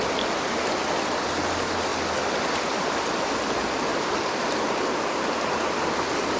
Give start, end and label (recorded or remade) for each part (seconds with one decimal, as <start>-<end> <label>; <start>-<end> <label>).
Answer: 0.0-1.9 recorded; 1.9-2.8 remade; 2.8-3.9 recorded; 3.9-4.9 remade; 4.9-6.4 recorded